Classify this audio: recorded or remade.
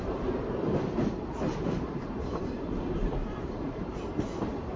remade